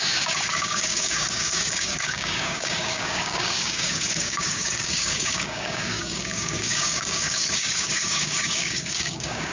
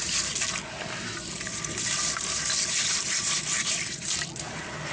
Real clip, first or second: second